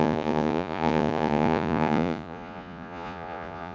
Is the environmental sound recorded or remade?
remade